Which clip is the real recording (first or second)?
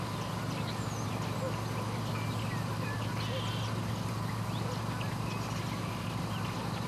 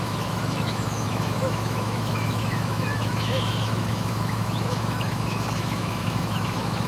first